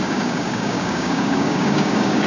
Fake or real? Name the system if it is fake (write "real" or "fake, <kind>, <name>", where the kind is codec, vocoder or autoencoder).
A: fake, codec, DAC